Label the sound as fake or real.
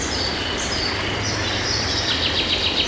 real